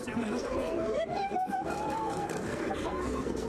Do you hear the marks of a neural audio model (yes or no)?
yes